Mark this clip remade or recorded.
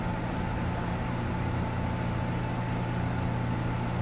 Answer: recorded